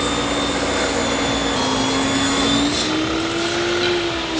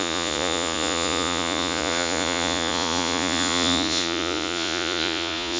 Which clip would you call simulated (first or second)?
second